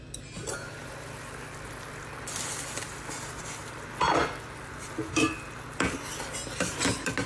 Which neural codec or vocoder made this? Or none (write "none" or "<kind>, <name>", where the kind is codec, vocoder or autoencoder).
none